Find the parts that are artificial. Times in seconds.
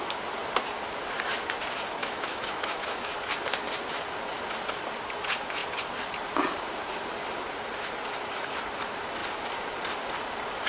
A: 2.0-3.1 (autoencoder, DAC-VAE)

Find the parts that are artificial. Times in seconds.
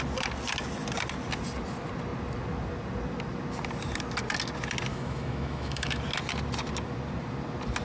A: 4.9-6.0 (autoencoder, DAC-VAE)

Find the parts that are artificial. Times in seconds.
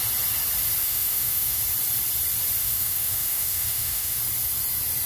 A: 0.8-1.6 (autoencoder, DAC-VAE); 2.6-4.2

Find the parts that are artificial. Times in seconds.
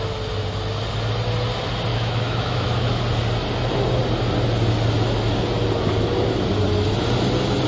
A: 1.9-3.0 (autoencoder, DAC-VAE)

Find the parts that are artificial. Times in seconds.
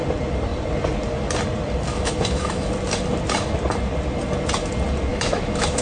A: 1.9-2.7 (autoencoder, DAC-VAE); 5.1-5.8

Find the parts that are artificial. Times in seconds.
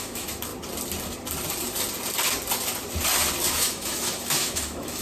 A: 0.0-0.5 (autoencoder, DAC-VAE); 3.5-5.0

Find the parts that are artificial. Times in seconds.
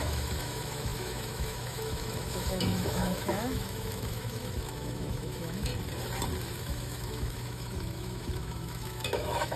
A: 0.0-5.7 (autoencoder, DAC-VAE); 6.4-9.6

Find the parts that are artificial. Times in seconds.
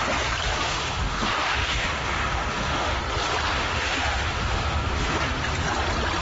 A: 0.5-3.0 (autoencoder, DAC-VAE); 3.6-5.2